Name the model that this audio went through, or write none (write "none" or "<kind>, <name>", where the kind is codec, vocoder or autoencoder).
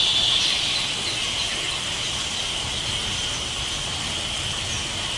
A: none